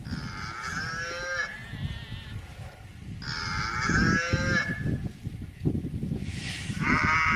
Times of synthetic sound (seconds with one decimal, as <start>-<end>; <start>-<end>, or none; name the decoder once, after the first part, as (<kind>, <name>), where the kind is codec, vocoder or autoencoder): 6.2-6.9 (autoencoder, DAC-VAE)